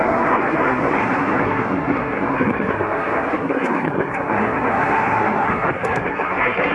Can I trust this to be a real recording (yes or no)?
no